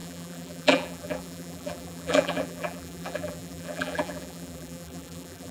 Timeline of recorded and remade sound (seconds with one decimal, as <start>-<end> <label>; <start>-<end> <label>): 0.0-5.5 remade